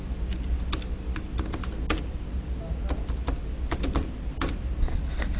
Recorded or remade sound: recorded